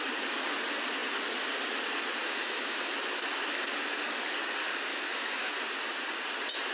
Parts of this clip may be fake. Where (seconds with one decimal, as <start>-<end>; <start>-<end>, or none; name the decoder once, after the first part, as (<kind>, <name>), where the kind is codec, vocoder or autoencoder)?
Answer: 2.2-2.9 (autoencoder, DAC-VAE); 4.9-5.5